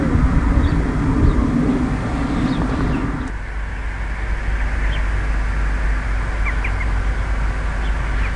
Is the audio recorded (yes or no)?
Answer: yes